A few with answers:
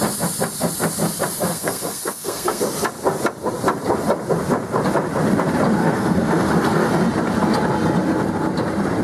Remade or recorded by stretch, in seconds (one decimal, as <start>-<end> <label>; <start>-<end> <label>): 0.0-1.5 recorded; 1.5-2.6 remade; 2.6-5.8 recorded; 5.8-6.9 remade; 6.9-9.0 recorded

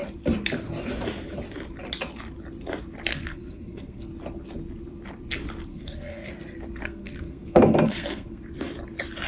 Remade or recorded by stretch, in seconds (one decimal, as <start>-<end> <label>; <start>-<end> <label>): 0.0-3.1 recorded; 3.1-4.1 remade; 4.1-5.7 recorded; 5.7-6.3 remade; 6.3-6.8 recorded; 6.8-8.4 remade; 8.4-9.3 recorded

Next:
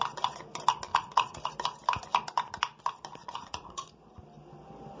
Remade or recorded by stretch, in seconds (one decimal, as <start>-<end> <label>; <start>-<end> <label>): 0.0-0.9 recorded; 0.9-1.5 remade; 1.5-3.2 recorded; 3.2-3.9 remade; 3.9-5.0 recorded

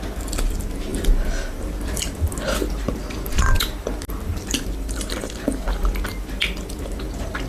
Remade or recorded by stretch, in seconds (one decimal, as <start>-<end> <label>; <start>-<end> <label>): 0.0-7.5 recorded

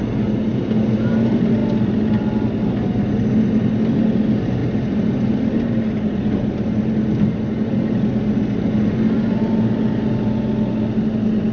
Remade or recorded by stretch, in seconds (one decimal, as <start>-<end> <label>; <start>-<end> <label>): 0.0-11.5 recorded

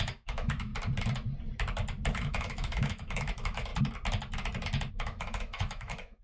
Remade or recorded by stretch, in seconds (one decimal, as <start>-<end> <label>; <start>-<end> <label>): 0.0-0.7 remade; 0.7-2.1 recorded; 2.1-3.7 remade; 3.7-4.9 recorded; 4.9-6.2 remade